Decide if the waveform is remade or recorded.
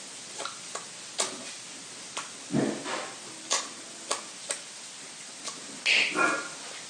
recorded